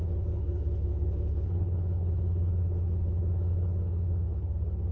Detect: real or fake fake